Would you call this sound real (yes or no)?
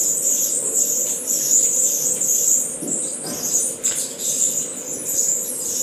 yes